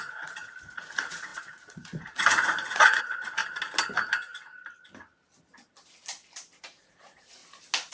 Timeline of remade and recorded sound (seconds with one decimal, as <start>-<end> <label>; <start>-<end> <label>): 0.0-3.4 remade; 3.4-6.8 recorded; 6.8-7.4 remade; 7.4-7.9 recorded